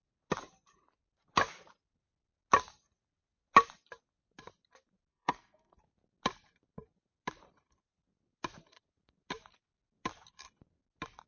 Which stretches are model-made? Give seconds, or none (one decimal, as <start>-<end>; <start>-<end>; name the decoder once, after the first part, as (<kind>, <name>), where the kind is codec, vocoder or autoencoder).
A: 5.1-5.8 (codec, SNAC)